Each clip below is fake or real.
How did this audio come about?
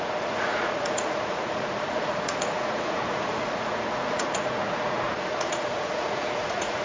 fake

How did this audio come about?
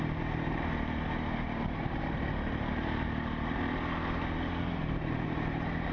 fake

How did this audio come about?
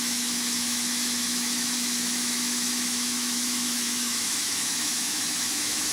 fake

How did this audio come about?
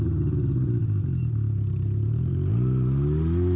real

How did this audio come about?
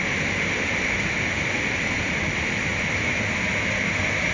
real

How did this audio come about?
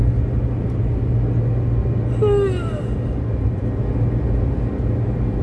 real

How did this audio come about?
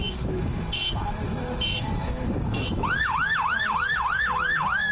fake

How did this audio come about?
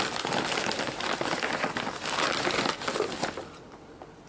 real